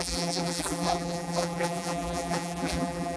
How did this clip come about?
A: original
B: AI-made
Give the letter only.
B